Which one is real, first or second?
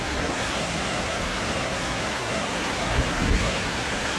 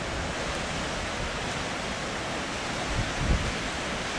second